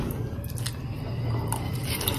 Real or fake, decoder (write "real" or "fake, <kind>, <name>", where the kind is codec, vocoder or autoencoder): real